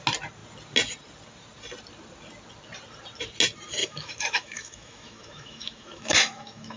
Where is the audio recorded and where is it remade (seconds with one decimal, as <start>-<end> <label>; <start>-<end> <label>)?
0.0-3.8 recorded; 3.8-6.8 remade